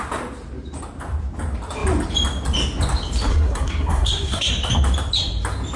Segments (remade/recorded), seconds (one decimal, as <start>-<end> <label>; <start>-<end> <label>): 0.0-3.3 recorded; 3.3-4.5 remade; 4.5-5.8 recorded